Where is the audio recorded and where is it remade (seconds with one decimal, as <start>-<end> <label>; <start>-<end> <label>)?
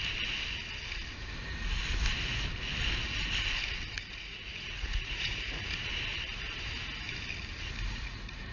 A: 0.0-3.9 recorded; 3.9-5.9 remade; 5.9-7.9 recorded; 7.9-8.5 remade